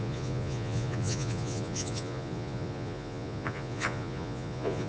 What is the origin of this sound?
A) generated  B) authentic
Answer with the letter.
A